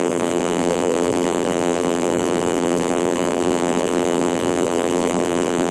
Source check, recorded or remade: remade